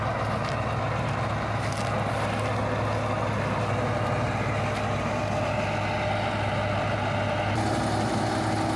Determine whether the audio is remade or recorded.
recorded